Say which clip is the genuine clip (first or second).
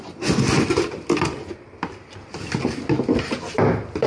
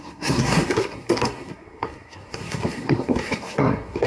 first